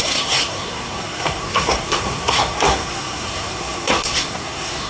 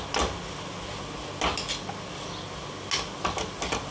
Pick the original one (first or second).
second